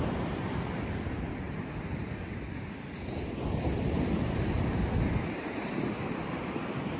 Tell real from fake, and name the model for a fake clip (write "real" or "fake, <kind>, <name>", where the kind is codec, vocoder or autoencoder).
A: real